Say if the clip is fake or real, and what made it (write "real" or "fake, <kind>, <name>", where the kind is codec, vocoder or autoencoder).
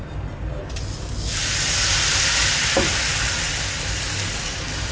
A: real